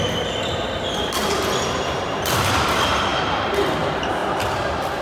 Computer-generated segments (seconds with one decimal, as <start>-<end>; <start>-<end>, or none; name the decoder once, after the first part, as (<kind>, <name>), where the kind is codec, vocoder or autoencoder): none